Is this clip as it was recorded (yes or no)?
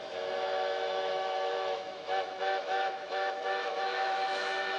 no